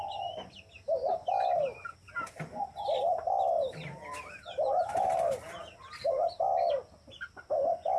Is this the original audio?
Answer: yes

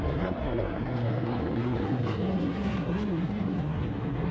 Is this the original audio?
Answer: no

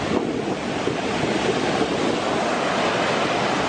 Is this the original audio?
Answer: yes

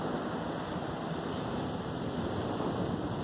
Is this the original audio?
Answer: yes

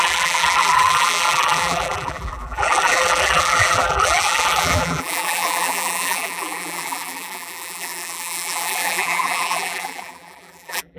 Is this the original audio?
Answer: no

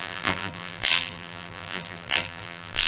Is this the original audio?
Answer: no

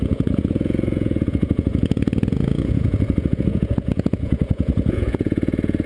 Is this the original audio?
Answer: no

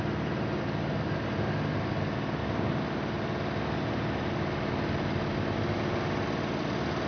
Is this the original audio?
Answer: yes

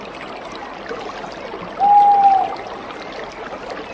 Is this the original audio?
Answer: yes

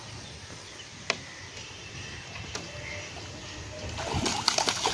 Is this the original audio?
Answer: yes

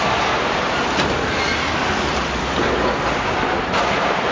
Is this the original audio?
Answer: yes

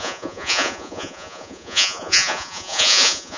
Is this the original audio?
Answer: no